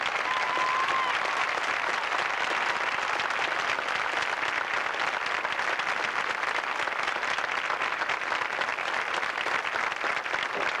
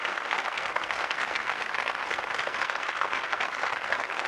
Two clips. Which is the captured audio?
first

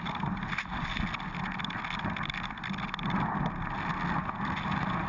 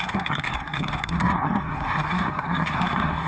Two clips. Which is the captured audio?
first